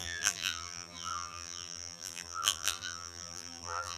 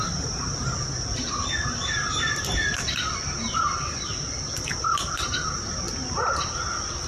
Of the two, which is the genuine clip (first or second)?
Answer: second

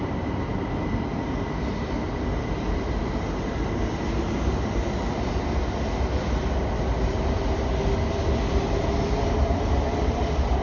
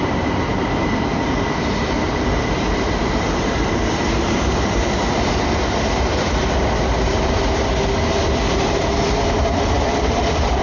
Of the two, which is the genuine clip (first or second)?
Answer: first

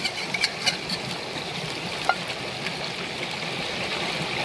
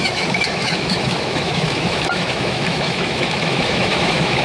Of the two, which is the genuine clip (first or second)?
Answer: first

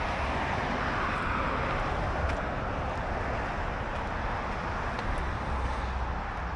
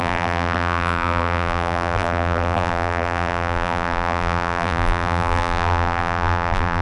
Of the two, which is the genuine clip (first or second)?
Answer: first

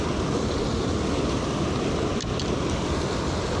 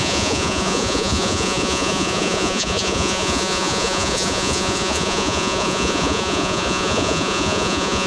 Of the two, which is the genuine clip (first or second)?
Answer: first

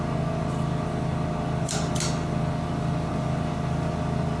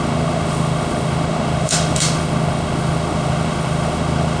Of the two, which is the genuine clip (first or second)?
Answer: first